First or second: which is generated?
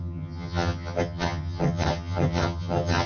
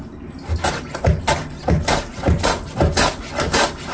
first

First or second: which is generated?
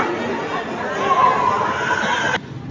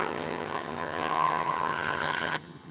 second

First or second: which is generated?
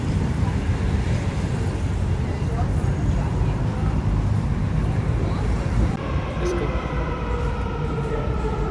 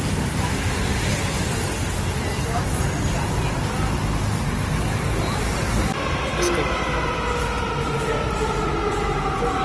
first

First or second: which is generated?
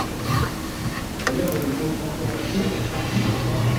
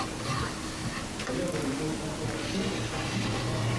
first